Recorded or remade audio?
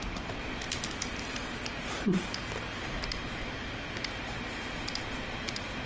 recorded